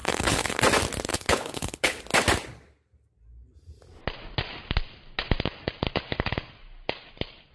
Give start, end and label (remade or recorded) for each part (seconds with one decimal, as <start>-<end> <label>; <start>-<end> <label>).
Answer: 0.0-0.6 remade; 0.6-1.1 recorded; 1.1-2.0 remade; 2.0-7.5 recorded